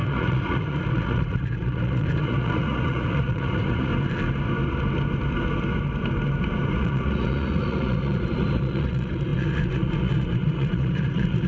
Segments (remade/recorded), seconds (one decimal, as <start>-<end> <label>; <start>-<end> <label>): 0.0-3.9 remade; 3.9-6.7 recorded; 6.7-11.5 remade